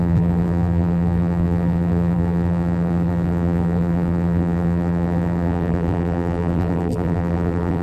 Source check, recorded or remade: remade